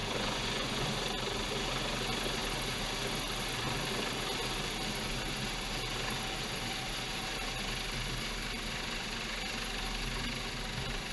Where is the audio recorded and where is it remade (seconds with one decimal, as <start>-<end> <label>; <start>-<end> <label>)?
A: 0.0-0.9 remade; 0.9-11.1 recorded